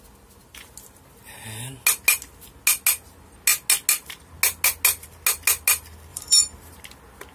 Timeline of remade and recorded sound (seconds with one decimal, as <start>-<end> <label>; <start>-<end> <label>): 0.0-6.1 recorded; 6.1-6.8 remade; 6.8-7.3 recorded